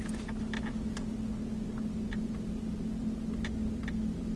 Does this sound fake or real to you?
real